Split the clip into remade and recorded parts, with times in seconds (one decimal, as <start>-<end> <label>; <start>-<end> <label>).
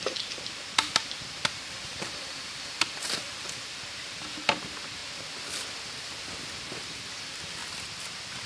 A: 0.0-5.0 remade; 5.0-6.7 recorded; 6.7-7.6 remade; 7.6-8.5 recorded